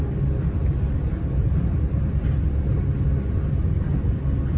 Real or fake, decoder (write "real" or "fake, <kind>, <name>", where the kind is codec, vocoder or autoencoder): real